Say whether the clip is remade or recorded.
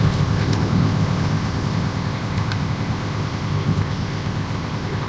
remade